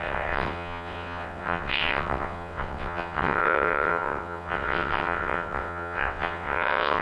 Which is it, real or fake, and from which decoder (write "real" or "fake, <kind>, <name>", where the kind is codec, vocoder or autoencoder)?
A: fake, vocoder, WaveNeXt